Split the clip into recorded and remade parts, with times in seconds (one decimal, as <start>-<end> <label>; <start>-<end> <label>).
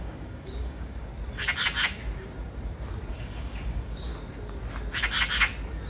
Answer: 0.0-1.1 remade; 1.1-3.1 recorded; 3.1-4.1 remade; 4.1-5.9 recorded